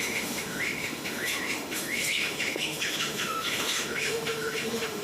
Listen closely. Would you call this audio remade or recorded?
remade